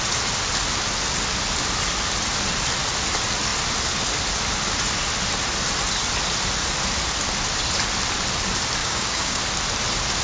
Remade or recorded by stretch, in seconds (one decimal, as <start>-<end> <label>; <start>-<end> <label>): 0.0-8.8 recorded; 8.8-9.4 remade; 9.4-10.2 recorded